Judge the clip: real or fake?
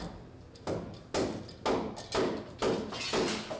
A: real